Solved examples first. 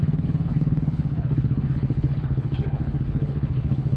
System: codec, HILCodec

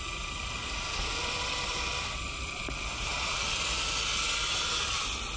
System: none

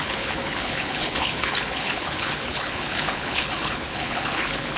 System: codec, HILCodec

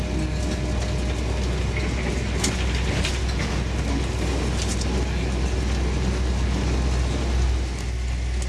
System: none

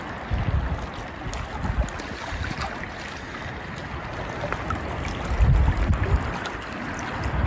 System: none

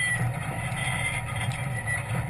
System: none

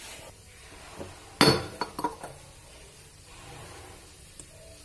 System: none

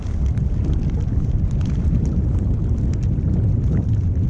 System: none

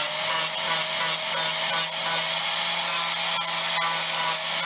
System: none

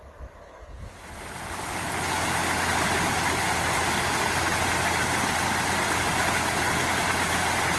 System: none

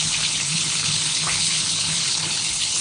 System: codec, HILCodec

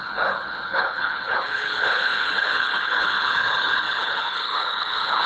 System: codec, HILCodec